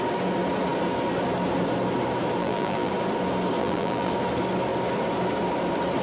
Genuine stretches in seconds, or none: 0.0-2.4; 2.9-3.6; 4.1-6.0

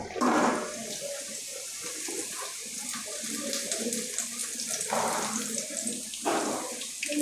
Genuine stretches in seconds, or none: 0.0-7.2